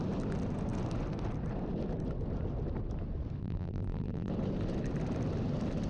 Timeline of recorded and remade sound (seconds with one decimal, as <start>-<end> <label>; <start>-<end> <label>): 0.0-3.4 recorded; 3.4-4.3 remade; 4.3-5.9 recorded